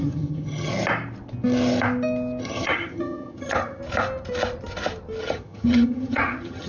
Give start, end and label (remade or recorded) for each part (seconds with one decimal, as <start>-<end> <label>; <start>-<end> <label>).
0.0-0.7 remade; 0.7-2.4 recorded; 2.4-3.8 remade; 3.8-5.2 recorded; 5.2-6.7 remade